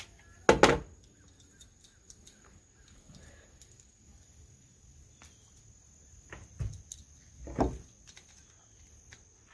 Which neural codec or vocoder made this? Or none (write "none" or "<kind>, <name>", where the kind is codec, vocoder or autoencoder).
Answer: none